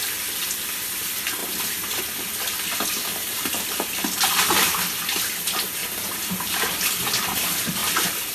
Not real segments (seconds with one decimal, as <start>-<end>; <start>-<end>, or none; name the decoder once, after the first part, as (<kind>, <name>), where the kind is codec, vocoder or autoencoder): none